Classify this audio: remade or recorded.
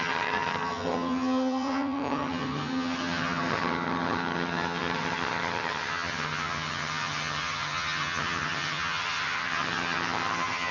remade